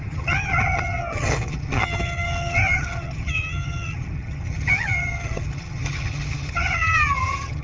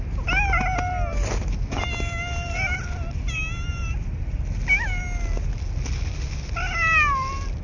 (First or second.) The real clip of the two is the second